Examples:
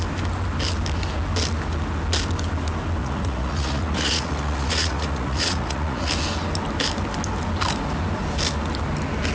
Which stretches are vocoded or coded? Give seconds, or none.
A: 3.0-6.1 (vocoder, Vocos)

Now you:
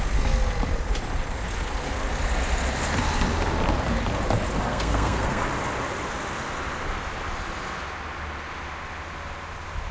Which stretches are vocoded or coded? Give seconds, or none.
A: 4.7-5.4 (codec, SNAC)

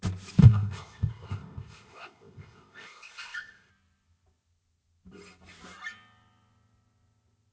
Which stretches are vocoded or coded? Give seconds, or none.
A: 0.4-3.7 (codec, ZipCodec)

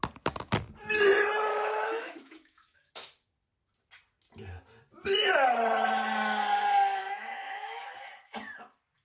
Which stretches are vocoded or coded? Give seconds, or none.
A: 1.5-2.9 (autoencoder, DAC-VAE); 7.0-7.8